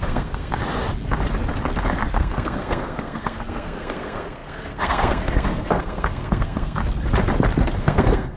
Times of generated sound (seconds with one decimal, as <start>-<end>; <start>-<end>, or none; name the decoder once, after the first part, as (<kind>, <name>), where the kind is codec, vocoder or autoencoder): 0.0-0.6 (codec, SNAC); 2.1-6.8; 7.8-8.4